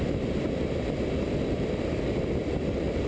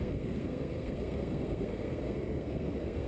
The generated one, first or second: second